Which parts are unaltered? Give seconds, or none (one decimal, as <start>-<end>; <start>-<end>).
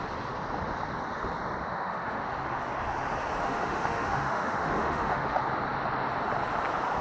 0.0-1.6; 2.3-3.4; 5.4-7.0